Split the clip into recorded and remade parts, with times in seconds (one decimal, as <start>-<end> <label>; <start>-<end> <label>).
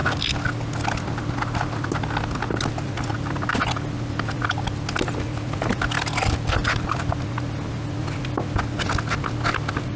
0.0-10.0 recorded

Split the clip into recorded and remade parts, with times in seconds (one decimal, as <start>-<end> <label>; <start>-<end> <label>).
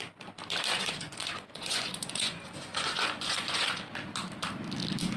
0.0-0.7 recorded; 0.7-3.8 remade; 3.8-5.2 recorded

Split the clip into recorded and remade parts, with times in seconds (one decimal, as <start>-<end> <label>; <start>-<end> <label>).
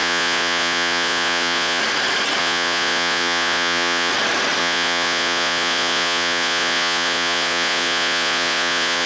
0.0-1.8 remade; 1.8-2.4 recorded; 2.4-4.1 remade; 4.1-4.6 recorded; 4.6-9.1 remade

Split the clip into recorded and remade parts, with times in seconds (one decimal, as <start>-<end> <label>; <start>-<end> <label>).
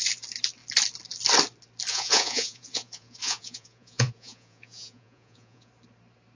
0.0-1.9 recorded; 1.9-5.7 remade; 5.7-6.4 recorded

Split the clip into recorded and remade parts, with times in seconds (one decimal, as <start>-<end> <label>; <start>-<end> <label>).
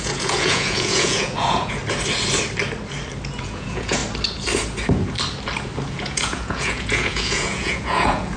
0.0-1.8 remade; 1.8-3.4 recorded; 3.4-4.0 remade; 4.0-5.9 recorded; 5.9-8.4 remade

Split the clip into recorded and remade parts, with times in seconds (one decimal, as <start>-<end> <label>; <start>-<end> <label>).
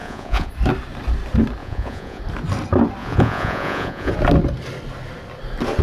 0.0-0.5 remade; 0.5-1.6 recorded; 1.6-2.2 remade; 2.2-3.0 recorded; 3.0-4.1 remade; 4.1-5.8 recorded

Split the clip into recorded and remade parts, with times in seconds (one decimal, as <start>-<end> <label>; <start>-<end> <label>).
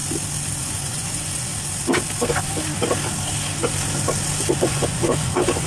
0.0-0.6 recorded; 0.6-1.5 remade; 1.5-4.6 recorded; 4.6-5.7 remade